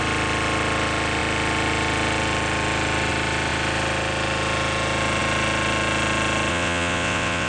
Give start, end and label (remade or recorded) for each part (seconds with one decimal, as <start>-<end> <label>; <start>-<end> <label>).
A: 0.0-6.5 recorded; 6.5-7.5 remade